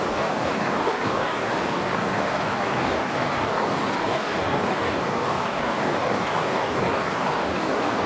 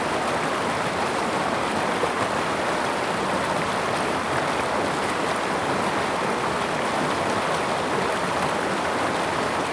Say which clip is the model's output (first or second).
first